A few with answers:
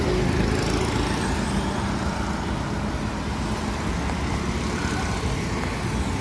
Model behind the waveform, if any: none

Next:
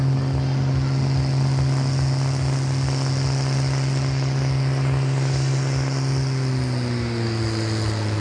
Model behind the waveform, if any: none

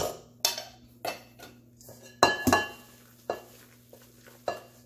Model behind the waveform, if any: none